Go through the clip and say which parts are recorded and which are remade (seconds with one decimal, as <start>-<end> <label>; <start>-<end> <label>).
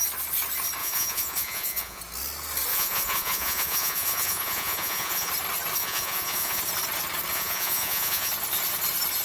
0.0-0.8 recorded; 0.8-2.0 remade; 2.0-2.7 recorded; 2.7-5.3 remade; 5.3-5.8 recorded; 5.8-6.6 remade; 6.6-7.3 recorded; 7.3-8.3 remade; 8.3-9.2 recorded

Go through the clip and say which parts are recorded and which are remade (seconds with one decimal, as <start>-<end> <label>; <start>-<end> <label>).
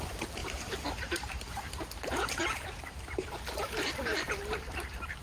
0.0-0.4 remade; 0.4-1.0 recorded; 1.0-5.2 remade